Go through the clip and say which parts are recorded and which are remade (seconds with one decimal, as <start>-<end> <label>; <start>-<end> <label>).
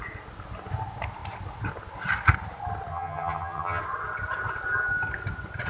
0.0-2.9 recorded; 2.9-3.8 remade; 3.8-5.7 recorded